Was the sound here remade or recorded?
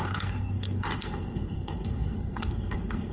remade